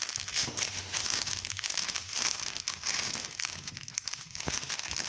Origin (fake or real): fake